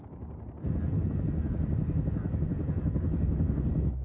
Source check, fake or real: real